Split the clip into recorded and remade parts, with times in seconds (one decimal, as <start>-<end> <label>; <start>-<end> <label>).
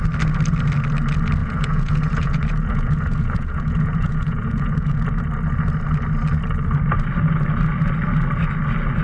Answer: 0.0-1.4 recorded; 1.4-5.2 remade; 5.2-9.0 recorded